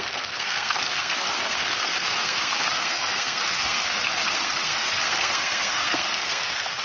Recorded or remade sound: remade